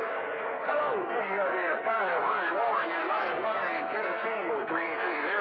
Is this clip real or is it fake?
fake